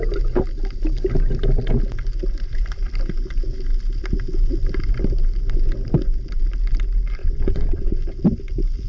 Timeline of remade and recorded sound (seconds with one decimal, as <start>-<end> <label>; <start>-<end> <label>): 0.0-7.2 recorded; 7.2-8.0 remade; 8.0-8.9 recorded